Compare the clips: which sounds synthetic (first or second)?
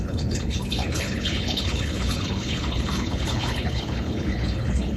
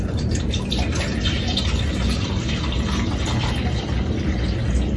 first